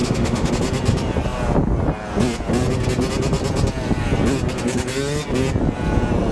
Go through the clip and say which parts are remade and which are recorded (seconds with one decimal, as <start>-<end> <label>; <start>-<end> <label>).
0.0-0.5 remade; 0.5-6.3 recorded